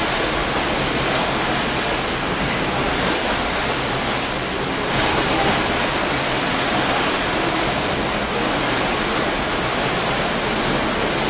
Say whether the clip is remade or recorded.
recorded